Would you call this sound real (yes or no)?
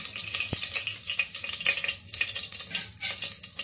yes